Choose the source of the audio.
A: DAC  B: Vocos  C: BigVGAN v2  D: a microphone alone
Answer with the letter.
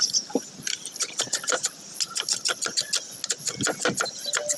D